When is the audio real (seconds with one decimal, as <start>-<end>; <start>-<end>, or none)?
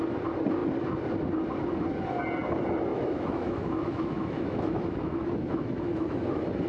0.0-2.9; 6.2-6.7